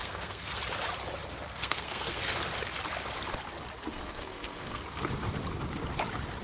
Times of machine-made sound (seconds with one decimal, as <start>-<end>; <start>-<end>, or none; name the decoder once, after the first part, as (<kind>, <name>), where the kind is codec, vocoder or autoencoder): 0.0-0.6 (codec, SNAC); 1.6-2.2; 3.9-4.8